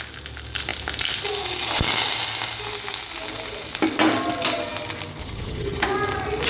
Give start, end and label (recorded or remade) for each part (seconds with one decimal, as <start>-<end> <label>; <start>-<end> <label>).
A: 0.0-5.2 recorded; 5.2-5.8 remade; 5.8-6.5 recorded